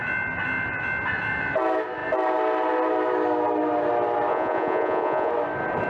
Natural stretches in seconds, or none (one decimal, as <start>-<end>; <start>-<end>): 0.0-4.3; 5.3-5.9